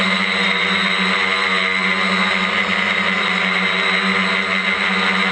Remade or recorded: recorded